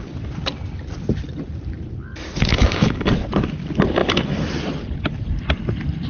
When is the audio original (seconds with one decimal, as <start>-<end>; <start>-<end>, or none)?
0.0-2.5; 3.1-6.1